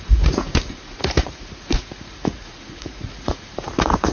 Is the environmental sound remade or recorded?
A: remade